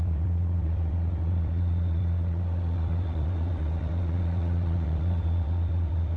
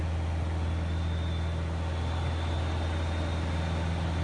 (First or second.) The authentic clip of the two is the second